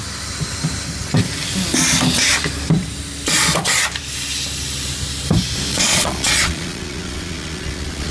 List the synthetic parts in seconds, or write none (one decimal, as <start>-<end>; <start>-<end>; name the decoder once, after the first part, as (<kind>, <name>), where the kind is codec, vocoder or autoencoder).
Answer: 5.7-8.1 (vocoder, Vocos)